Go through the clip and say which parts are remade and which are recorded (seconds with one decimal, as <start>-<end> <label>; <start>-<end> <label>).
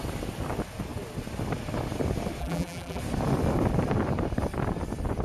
0.0-2.4 recorded; 2.4-3.0 remade; 3.0-5.2 recorded